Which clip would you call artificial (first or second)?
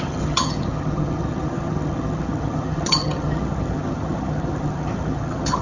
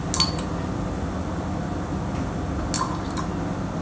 first